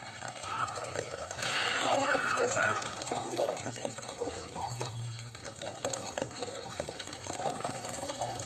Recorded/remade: remade